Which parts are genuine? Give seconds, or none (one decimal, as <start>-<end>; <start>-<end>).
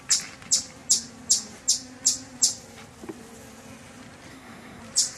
0.0-4.3; 4.8-5.2